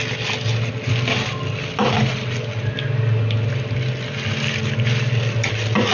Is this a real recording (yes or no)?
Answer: yes